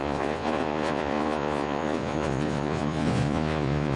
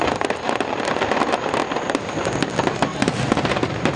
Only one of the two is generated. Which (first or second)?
first